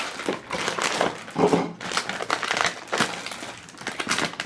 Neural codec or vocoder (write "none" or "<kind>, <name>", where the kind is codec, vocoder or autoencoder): none